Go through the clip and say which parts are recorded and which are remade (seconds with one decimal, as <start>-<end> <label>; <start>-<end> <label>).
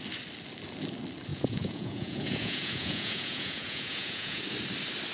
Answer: 0.0-1.3 recorded; 1.3-4.4 remade; 4.4-5.1 recorded